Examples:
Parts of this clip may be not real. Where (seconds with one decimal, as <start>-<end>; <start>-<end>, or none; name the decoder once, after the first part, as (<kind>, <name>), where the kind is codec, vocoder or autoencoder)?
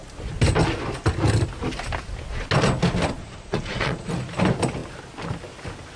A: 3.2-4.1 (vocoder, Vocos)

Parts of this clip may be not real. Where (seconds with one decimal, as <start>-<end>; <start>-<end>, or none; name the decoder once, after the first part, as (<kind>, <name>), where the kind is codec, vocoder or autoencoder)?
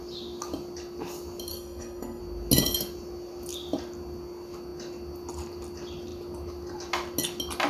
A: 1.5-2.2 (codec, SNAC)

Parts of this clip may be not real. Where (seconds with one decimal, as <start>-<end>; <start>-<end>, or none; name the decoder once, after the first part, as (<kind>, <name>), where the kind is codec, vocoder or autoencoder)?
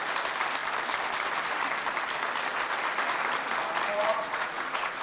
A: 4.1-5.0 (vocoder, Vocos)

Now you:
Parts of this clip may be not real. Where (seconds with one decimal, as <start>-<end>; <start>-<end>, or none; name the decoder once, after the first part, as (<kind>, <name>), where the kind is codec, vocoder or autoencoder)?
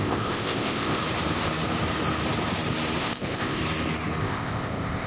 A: 0.0-1.0 (codec, ZipCodec); 3.0-3.6; 4.2-5.1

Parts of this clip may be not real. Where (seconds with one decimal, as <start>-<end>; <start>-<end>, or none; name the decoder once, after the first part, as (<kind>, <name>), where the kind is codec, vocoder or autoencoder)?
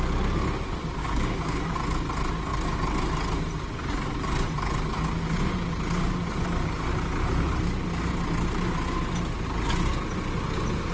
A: 1.0-1.6 (codec, DAC)